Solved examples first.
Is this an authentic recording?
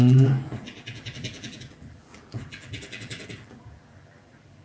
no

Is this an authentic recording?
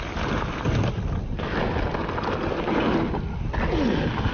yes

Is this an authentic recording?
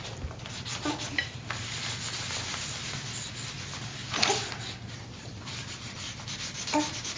yes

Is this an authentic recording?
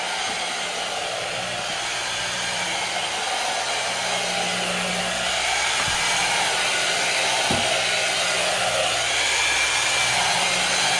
yes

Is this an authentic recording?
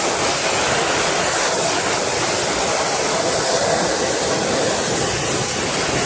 yes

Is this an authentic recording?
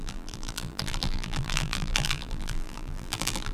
no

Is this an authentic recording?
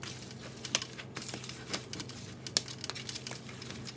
yes